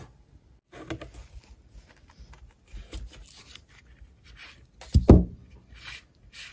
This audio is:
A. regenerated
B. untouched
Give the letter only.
B